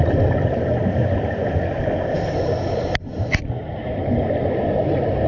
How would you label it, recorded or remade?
recorded